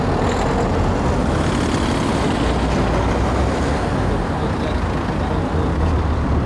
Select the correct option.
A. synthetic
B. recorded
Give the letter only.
B